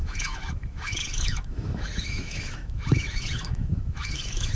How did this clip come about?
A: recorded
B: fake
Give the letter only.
B